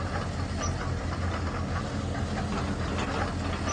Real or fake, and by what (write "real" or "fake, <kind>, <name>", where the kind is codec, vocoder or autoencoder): real